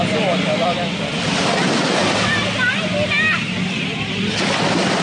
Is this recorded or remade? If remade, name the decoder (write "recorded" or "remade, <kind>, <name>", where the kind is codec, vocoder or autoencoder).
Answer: recorded